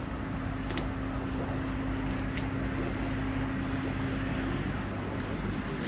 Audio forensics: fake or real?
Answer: real